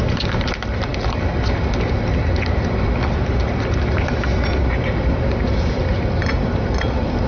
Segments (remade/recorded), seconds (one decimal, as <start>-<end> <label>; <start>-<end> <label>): 0.0-7.3 recorded

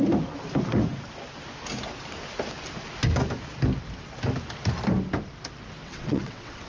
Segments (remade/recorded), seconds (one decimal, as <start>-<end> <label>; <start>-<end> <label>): 0.0-5.8 recorded; 5.8-6.7 remade

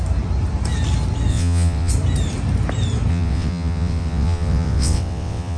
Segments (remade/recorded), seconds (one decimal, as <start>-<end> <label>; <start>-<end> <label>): 0.0-1.3 recorded; 1.3-1.9 remade; 1.9-3.1 recorded; 3.1-5.6 remade

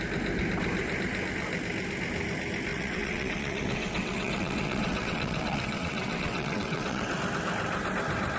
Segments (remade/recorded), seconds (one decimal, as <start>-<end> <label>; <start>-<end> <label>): 0.0-2.7 recorded; 2.7-7.2 remade; 7.2-8.4 recorded

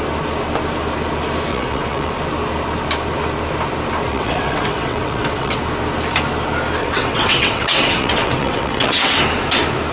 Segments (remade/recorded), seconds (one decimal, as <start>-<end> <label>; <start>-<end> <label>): 0.0-1.5 recorded; 1.5-2.1 remade; 2.1-4.1 recorded; 4.1-5.6 remade; 5.6-6.8 recorded; 6.8-9.2 remade; 9.2-9.9 recorded

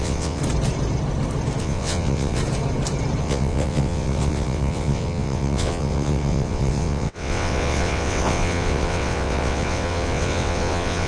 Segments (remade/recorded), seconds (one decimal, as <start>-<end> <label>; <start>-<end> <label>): 0.0-0.4 remade; 0.4-1.6 recorded; 1.6-2.4 remade; 2.4-3.2 recorded; 3.2-11.1 remade